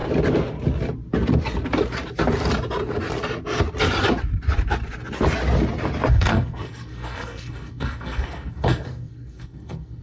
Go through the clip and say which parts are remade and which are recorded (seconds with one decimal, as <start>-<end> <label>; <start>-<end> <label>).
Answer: 0.0-6.1 recorded; 6.1-10.0 remade